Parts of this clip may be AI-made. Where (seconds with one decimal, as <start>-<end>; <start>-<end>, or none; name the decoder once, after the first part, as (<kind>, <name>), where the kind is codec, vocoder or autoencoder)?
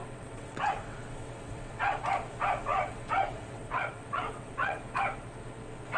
0.0-2.0 (vocoder, WaveNeXt); 2.6-4.8